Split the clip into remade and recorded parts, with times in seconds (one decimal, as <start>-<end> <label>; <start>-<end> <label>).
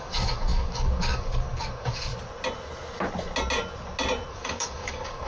0.0-2.1 remade; 2.1-4.3 recorded; 4.3-5.3 remade